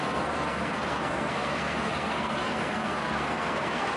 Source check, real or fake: fake